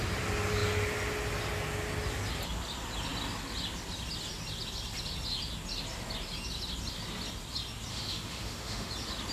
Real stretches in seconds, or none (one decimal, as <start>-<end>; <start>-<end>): 0.0-7.9; 8.9-9.3